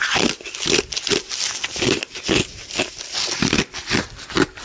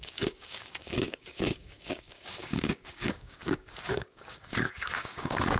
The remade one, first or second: second